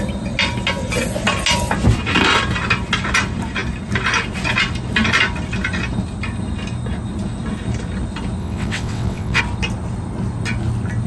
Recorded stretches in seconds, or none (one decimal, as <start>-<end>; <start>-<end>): 0.0-8.4; 9.4-11.1